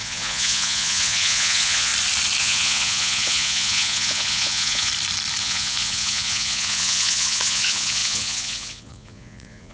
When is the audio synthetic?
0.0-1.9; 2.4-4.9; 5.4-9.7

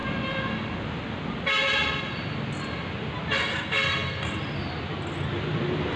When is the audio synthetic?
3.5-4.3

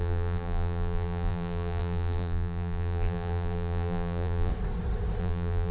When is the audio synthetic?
0.0-4.5; 5.2-5.7

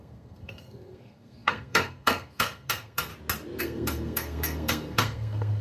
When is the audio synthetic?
0.0-3.1; 3.6-5.6

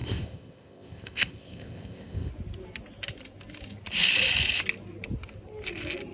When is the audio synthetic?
0.0-2.3